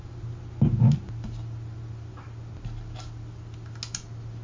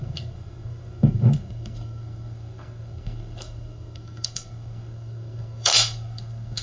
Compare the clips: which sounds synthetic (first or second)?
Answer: second